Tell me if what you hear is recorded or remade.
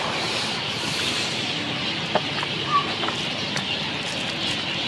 recorded